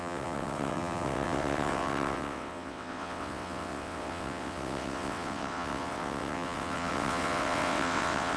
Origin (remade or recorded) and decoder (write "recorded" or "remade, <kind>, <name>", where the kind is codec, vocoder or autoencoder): remade, vocoder, WaveNeXt